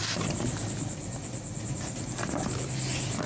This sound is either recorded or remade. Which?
recorded